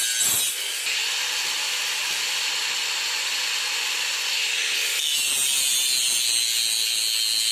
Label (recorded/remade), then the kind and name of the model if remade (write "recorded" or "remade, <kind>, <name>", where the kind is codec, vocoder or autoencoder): recorded